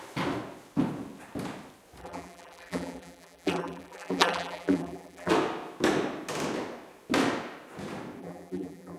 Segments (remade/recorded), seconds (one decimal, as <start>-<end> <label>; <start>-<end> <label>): 0.0-2.0 recorded; 2.0-5.3 remade; 5.3-8.2 recorded; 8.2-9.0 remade